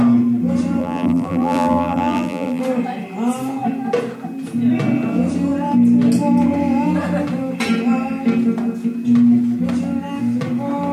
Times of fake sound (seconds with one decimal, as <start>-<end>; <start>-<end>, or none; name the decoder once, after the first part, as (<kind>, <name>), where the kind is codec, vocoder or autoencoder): 0.8-2.6 (vocoder, BigVGAN v2)